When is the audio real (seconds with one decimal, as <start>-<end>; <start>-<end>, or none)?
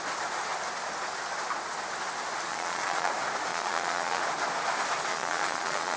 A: 0.0-2.5; 3.1-3.5; 4.2-5.1